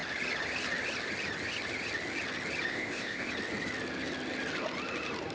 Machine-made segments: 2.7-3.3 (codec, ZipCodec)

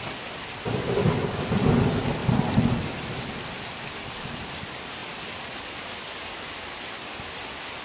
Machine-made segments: none

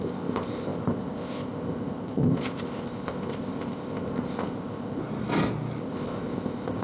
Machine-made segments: 0.0-5.0 (codec, ZipCodec); 5.8-6.8